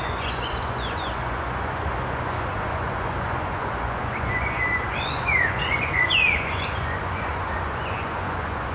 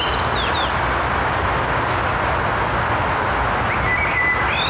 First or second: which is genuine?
second